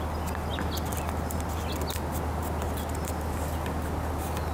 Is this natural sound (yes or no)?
yes